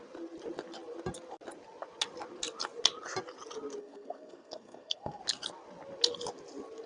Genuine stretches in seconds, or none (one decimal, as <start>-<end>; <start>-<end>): 0.0-3.8; 5.2-6.9